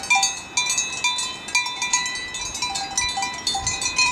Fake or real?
real